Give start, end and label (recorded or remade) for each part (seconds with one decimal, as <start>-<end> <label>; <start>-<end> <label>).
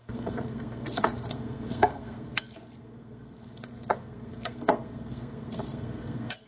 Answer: 0.0-6.5 remade